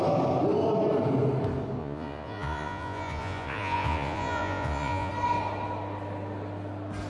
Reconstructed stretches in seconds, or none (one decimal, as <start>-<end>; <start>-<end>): 1.8-5.1